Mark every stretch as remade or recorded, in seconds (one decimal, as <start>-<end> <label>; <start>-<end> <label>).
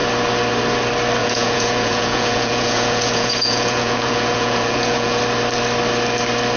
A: 0.0-1.2 recorded; 1.2-5.2 remade; 5.2-6.6 recorded